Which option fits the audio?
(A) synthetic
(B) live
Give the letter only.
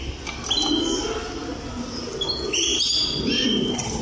B